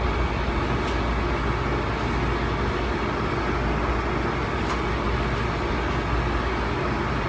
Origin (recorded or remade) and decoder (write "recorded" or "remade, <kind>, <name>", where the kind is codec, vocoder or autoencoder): recorded